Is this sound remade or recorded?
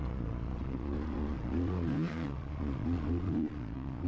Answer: remade